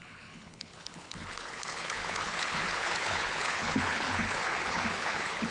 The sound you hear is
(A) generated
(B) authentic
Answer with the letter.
A